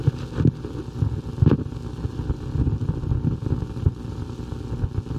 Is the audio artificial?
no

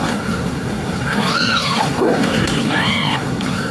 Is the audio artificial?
yes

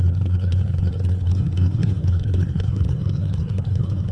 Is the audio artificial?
yes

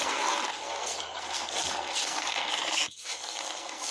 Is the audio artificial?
yes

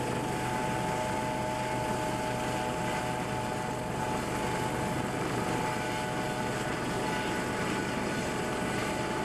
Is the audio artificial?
no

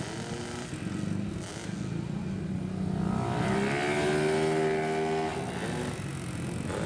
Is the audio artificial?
no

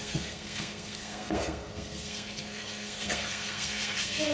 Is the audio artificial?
yes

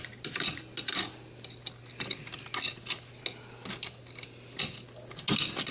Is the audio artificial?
no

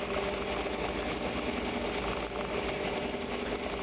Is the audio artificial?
no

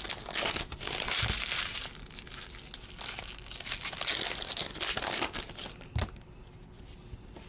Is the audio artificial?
no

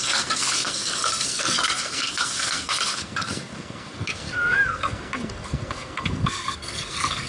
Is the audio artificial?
yes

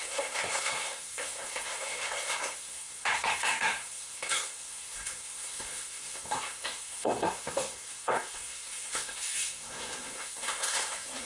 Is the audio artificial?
yes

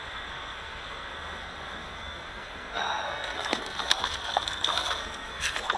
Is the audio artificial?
yes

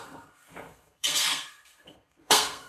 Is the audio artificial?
yes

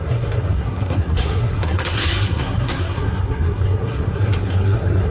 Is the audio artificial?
yes